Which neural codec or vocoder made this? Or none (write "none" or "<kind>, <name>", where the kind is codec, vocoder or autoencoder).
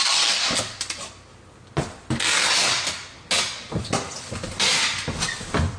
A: none